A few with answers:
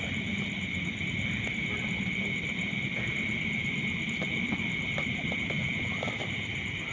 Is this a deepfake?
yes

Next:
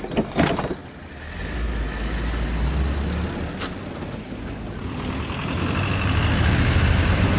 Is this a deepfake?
no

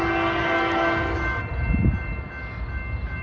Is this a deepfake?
no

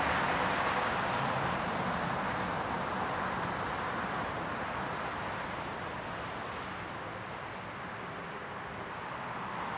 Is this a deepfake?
no